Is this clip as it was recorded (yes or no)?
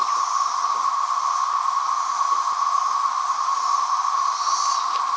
yes